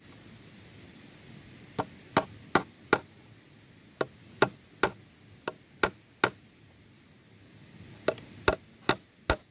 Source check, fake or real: real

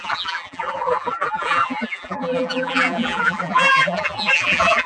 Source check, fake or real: fake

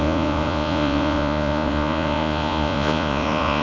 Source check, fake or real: fake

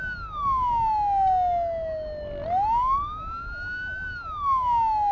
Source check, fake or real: real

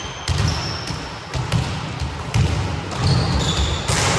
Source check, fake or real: real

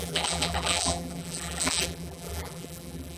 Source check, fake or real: fake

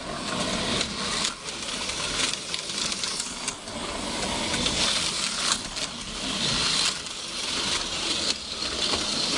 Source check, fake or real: real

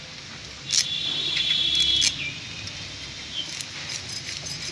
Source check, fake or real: real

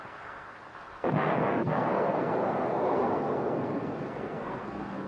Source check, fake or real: fake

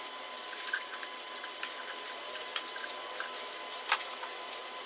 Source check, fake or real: real